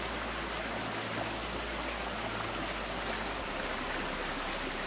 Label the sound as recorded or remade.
recorded